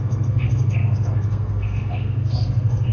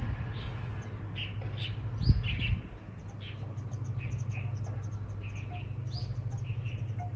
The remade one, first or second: first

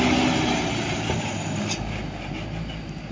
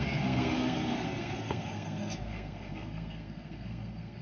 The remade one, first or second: second